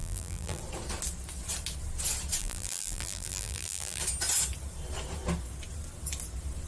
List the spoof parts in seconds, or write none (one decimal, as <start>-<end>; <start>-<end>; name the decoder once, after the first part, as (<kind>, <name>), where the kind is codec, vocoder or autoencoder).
0.0-0.6 (vocoder, BigVGAN v2); 2.4-4.0